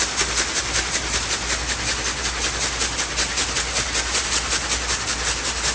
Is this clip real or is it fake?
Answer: real